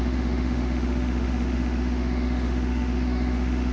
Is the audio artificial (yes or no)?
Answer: yes